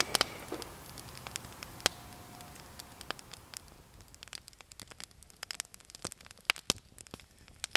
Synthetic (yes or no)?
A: no